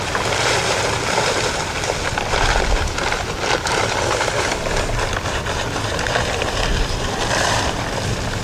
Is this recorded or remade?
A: remade